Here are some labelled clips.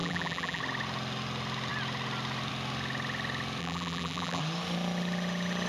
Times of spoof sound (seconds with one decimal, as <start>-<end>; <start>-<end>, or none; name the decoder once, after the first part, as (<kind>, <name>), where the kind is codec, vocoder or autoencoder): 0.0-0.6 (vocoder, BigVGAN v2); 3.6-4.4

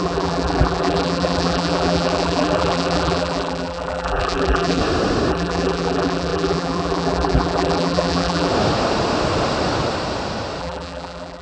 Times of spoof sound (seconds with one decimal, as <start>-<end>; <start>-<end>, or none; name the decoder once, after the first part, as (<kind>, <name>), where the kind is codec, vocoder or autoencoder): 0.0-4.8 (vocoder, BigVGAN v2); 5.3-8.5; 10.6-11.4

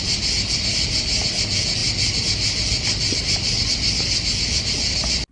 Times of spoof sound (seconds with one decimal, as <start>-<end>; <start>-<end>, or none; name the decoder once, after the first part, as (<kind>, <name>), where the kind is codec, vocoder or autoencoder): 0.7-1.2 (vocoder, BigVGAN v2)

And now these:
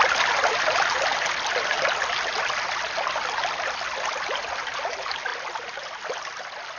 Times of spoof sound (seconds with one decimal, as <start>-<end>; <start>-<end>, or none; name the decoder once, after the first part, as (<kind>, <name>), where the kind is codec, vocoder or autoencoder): 1.1-4.1 (vocoder, BigVGAN v2); 5.3-6.0

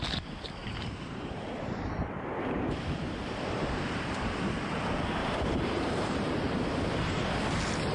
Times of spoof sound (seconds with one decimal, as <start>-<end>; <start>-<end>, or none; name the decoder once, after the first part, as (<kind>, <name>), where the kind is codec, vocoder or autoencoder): 0.6-4.4 (vocoder, BigVGAN v2); 5.2-6.4

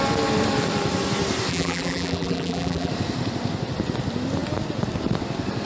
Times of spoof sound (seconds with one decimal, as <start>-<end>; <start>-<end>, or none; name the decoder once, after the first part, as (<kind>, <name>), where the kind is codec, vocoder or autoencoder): 1.5-2.9 (vocoder, BigVGAN v2)